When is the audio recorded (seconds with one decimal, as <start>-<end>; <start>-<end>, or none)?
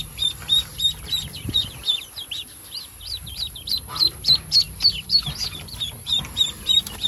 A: 0.0-7.1